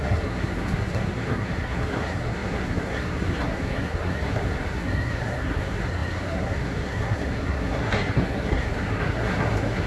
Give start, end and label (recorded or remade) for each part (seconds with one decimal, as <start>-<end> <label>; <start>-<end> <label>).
0.0-9.9 remade